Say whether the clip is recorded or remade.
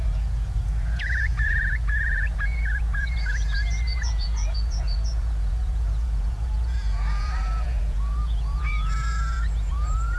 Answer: remade